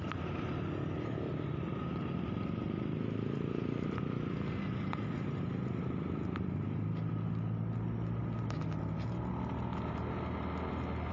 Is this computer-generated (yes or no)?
no